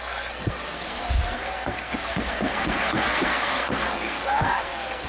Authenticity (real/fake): fake